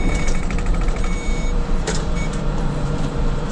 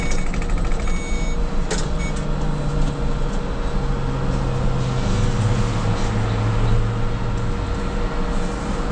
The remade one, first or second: first